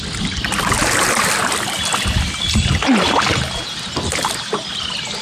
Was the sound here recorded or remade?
recorded